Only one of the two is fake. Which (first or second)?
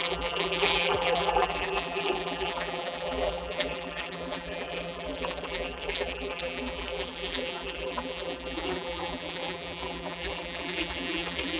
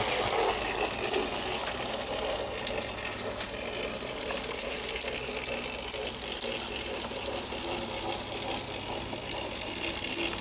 first